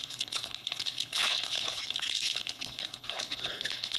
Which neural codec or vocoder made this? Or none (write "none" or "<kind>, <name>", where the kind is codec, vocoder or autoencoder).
codec, HILCodec